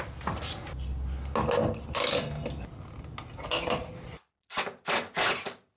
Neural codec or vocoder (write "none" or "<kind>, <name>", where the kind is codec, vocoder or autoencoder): none